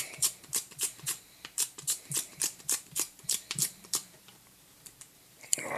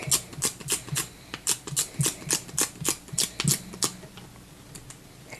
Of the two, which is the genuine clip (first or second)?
second